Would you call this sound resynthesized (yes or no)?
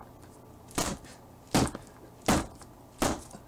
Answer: no